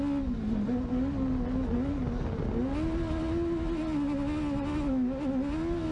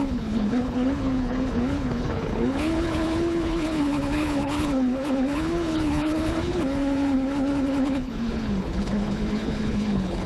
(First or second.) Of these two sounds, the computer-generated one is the second